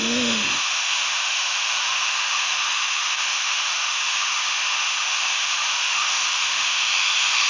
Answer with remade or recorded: remade